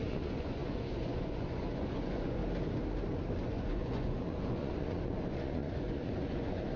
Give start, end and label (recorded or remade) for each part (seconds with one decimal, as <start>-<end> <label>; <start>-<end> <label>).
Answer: 0.0-2.4 remade; 2.4-3.4 recorded; 3.4-6.8 remade